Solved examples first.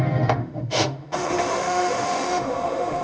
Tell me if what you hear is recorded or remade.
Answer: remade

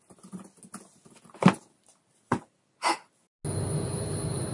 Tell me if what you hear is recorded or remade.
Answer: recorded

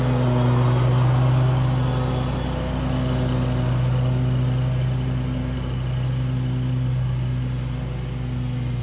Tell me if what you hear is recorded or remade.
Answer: recorded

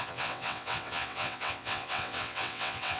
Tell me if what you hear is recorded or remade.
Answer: remade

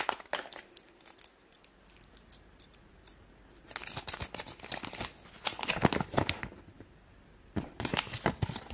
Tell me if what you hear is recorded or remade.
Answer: recorded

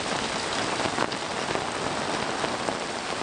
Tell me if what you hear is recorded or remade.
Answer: recorded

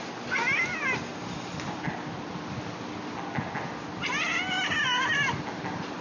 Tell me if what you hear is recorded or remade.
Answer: recorded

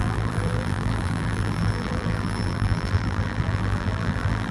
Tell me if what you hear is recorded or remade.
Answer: remade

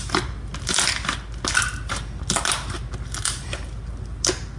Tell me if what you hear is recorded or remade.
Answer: recorded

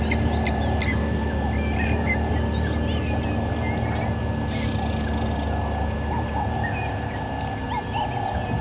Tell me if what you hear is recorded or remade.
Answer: recorded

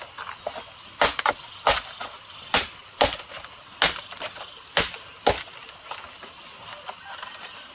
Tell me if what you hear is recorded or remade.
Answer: recorded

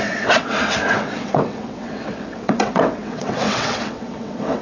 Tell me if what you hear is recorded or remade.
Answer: remade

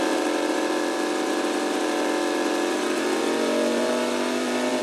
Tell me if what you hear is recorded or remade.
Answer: remade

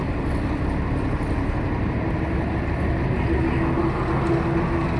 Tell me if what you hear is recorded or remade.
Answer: recorded